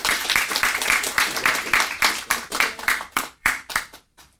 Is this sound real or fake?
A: fake